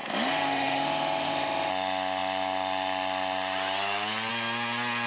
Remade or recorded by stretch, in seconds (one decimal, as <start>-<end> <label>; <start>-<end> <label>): 0.0-1.7 remade; 1.7-5.1 recorded